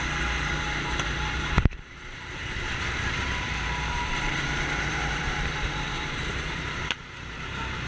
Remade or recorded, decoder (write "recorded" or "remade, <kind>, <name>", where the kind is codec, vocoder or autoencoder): remade, vocoder, BigVGAN v2